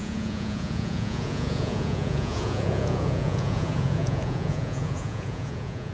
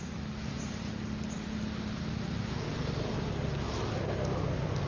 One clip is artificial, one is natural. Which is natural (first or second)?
second